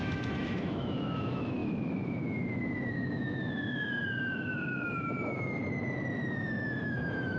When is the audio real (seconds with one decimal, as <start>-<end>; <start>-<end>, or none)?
5.6-6.3